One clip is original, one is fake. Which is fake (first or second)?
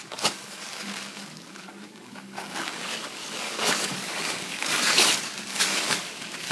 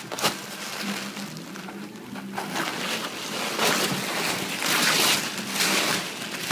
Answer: first